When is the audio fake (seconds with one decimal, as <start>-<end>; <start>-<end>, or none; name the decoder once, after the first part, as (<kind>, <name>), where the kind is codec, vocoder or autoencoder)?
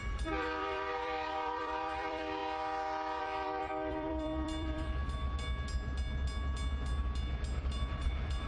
0.0-2.4 (vocoder, BigVGAN v2); 3.2-5.0; 7.6-8.5